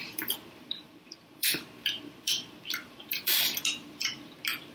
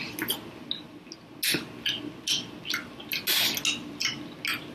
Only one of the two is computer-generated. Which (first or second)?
first